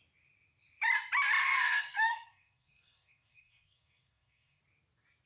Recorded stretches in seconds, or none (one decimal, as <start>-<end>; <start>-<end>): 0.0-1.4; 4.6-5.3